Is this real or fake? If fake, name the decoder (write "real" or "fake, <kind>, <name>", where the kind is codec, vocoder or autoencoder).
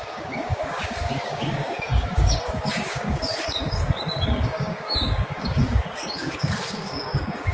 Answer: fake, codec, DAC